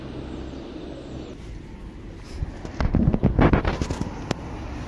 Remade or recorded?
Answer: recorded